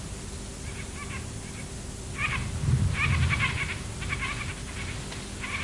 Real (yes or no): yes